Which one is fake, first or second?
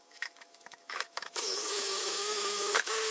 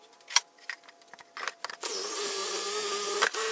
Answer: first